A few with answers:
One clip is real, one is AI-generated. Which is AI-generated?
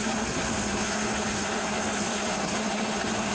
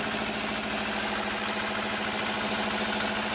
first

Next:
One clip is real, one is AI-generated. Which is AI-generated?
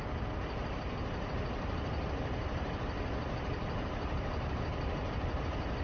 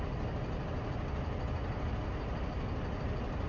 first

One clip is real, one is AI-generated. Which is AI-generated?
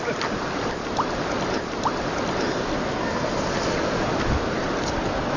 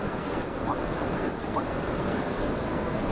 second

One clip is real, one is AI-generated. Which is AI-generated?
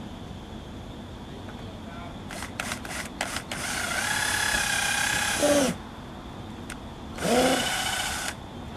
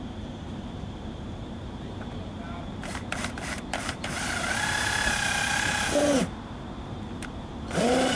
second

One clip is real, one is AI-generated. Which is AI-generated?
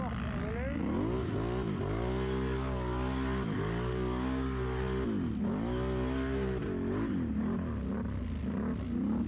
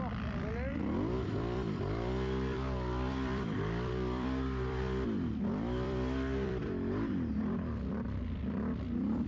second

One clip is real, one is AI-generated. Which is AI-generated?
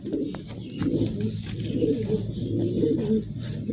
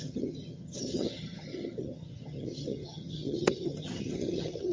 second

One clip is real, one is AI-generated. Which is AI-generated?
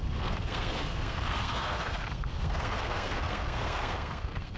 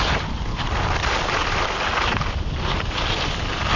first